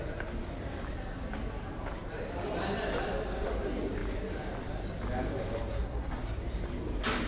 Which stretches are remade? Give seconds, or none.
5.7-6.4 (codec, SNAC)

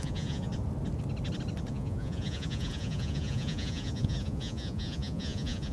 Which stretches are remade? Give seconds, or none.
0.0-0.5 (vocoder, Vocos); 1.7-5.7